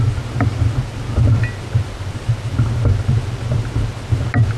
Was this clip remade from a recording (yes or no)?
no